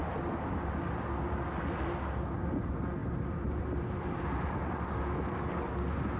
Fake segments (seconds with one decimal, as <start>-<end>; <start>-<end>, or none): 3.0-4.5